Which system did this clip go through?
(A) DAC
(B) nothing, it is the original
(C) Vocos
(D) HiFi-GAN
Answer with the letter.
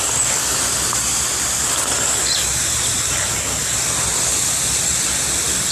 B